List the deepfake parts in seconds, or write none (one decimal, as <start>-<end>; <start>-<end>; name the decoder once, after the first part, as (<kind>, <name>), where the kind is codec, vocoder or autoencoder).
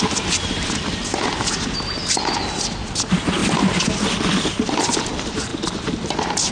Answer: none